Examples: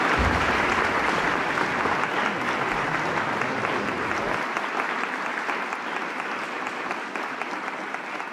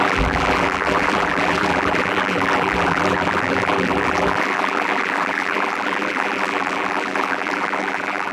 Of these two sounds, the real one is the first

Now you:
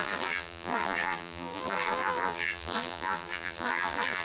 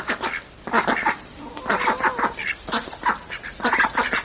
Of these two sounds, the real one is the second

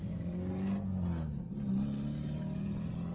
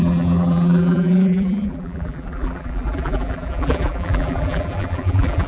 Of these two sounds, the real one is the first